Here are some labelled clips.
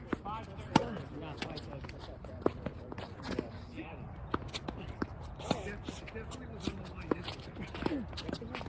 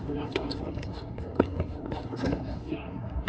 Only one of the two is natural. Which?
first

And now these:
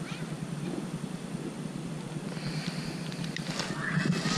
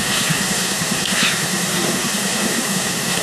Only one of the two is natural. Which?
first